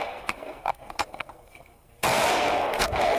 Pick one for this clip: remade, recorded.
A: remade